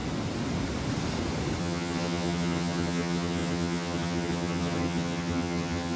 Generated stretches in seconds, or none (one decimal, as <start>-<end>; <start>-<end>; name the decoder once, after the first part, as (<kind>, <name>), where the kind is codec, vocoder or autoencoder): 1.6-6.0 (vocoder, HiFi-GAN)